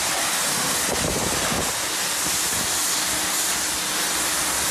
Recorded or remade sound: recorded